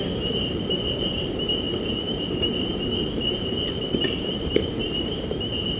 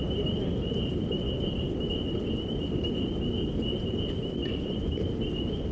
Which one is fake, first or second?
first